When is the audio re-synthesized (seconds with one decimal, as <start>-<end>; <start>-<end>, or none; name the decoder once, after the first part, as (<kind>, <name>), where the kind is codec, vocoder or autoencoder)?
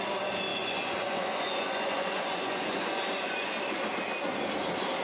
0.5-3.5 (vocoder, Vocos)